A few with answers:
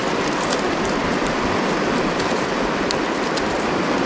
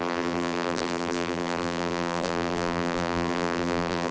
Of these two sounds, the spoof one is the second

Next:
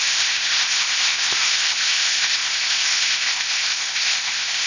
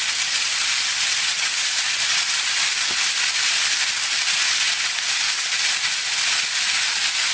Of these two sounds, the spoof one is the first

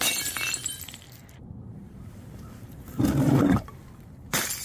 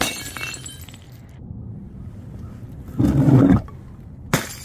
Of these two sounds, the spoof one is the first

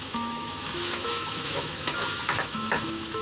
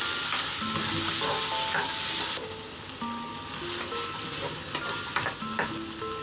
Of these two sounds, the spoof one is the first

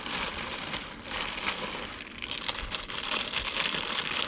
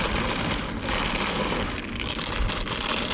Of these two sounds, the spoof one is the first